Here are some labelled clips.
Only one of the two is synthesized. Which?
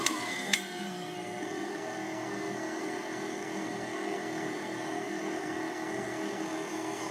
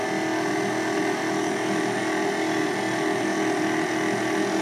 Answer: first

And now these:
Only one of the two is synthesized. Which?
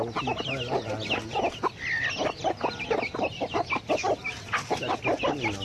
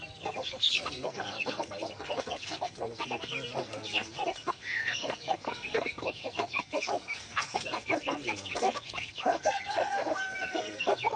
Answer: second